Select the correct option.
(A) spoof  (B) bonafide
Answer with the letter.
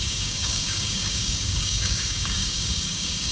A